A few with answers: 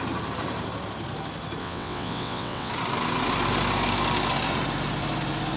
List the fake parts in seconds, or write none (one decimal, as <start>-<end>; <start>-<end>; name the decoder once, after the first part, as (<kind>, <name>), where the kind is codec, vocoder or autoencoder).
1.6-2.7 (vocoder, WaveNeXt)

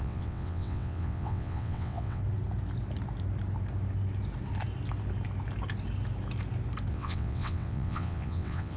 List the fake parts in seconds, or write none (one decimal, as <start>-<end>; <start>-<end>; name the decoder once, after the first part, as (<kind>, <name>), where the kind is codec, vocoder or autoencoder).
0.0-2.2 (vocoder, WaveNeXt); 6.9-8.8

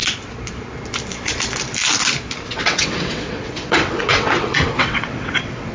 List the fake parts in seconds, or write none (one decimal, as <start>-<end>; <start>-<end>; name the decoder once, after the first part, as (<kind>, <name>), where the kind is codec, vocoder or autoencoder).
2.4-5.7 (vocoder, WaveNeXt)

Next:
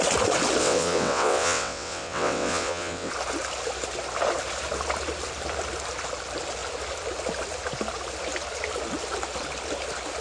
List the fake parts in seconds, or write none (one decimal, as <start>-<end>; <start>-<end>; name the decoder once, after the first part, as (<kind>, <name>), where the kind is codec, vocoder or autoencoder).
0.6-3.1 (vocoder, WaveNeXt)

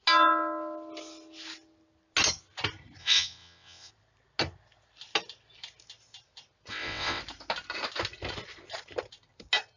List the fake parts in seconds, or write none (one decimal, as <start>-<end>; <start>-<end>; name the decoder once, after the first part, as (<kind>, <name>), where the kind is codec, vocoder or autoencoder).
3.0-3.9 (vocoder, WaveNeXt); 6.7-7.2